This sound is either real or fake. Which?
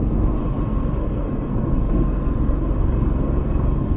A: fake